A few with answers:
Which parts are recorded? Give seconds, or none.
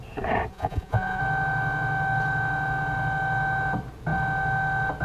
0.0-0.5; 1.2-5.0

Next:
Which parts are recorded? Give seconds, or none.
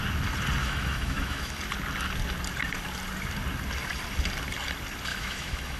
0.0-0.6; 1.6-5.1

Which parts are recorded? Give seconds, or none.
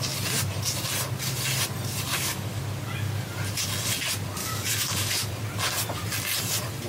0.0-2.1; 2.6-4.4; 5.3-6.9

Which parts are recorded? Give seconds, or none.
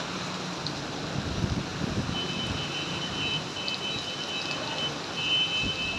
0.0-6.0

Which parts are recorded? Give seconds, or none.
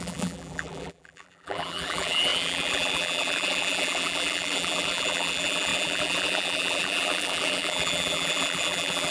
none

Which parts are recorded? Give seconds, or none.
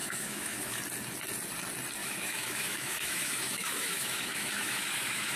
0.8-2.0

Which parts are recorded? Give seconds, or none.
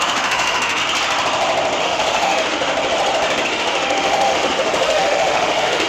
0.8-1.8; 2.7-3.5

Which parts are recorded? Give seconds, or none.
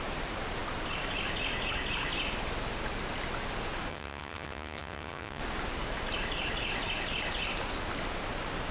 0.0-3.9; 5.4-8.7